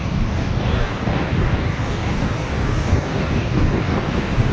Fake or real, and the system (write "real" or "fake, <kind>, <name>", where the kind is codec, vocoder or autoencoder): fake, codec, DAC